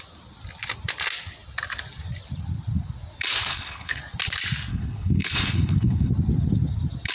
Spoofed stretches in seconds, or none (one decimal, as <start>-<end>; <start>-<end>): 3.5-4.0; 4.7-6.1